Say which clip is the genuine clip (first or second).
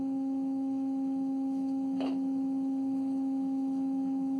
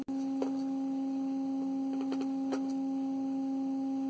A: second